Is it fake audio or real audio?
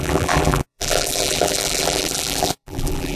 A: fake